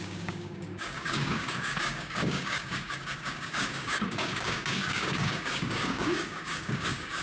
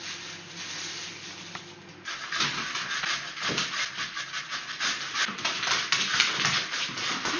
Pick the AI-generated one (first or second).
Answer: first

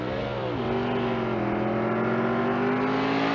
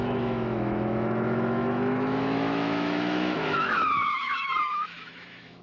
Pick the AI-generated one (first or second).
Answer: second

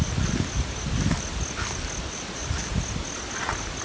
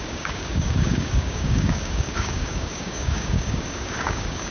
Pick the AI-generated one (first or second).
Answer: second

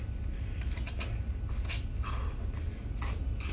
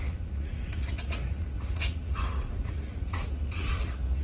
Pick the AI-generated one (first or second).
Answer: second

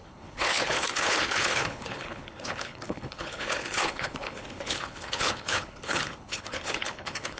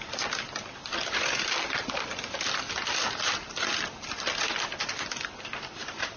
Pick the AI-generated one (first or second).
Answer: first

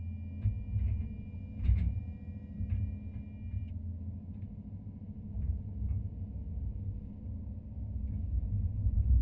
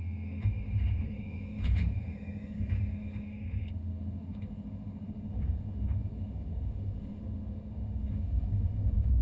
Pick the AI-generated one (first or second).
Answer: second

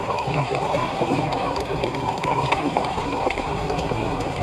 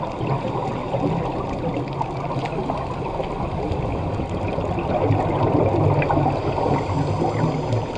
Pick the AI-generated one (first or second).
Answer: first